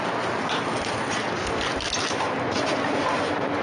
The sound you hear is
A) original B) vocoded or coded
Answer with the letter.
A